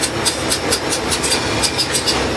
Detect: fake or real real